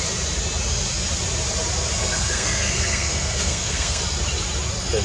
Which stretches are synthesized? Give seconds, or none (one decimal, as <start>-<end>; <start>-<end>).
2.0-4.0